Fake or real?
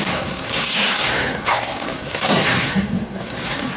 fake